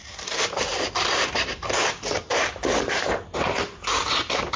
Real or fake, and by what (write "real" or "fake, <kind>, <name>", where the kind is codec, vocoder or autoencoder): fake, vocoder, BigVGAN v2